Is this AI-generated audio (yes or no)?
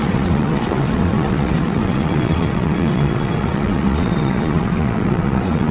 yes